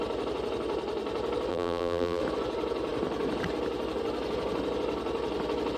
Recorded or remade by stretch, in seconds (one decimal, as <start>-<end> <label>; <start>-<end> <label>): 0.0-1.5 recorded; 1.5-2.2 remade; 2.2-5.8 recorded